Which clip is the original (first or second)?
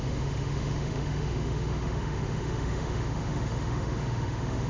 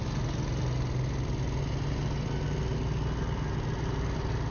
second